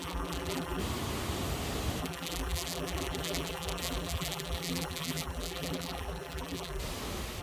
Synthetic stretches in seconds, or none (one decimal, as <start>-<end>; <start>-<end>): 0.0-0.8; 2.0-6.8